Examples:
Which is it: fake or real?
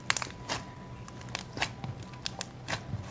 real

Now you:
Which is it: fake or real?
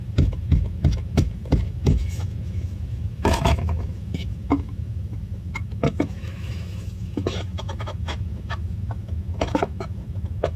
fake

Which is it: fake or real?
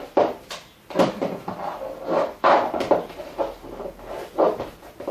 real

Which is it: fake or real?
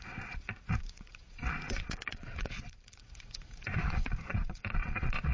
fake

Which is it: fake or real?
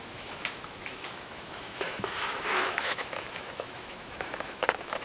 fake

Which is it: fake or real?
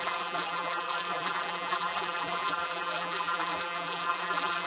fake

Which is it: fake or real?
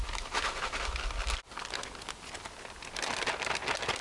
real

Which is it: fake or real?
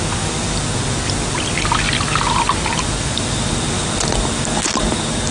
real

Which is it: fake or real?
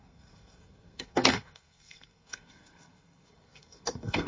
fake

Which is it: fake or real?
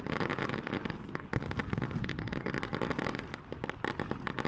real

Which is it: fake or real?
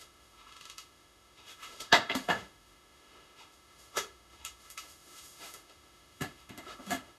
fake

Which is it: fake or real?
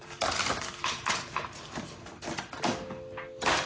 real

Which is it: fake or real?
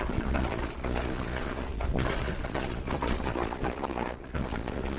fake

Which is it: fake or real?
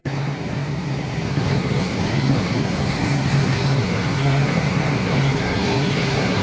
fake